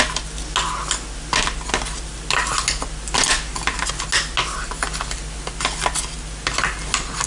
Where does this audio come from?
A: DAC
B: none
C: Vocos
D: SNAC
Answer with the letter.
B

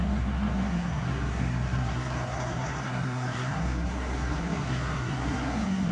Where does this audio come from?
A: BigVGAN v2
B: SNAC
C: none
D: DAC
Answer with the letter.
B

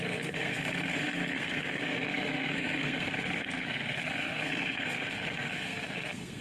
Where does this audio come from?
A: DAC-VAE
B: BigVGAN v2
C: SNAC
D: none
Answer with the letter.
C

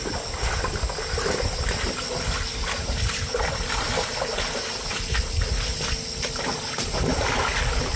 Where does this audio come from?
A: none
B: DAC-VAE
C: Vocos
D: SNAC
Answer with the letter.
A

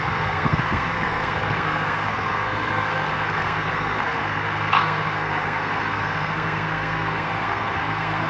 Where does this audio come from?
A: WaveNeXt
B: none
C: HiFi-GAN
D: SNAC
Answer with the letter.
D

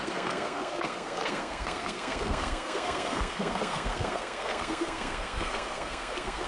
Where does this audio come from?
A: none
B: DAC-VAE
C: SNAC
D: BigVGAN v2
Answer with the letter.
C